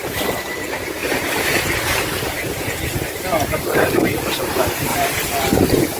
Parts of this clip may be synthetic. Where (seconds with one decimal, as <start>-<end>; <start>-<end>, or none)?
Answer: 0.0-6.0